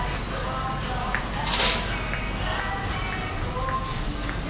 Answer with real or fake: real